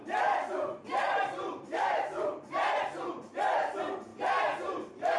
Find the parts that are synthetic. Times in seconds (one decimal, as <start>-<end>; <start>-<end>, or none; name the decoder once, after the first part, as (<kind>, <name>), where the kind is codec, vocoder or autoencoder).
1.0-2.8 (vocoder, BigVGAN v2)